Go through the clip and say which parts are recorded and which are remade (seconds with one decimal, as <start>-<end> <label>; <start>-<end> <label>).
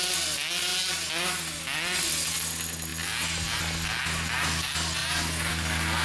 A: 0.0-6.0 recorded